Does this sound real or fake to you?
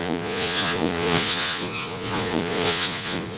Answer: fake